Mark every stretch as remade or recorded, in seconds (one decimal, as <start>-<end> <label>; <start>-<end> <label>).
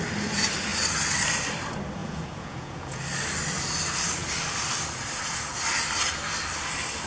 0.0-2.0 recorded; 2.0-3.0 remade; 3.0-7.1 recorded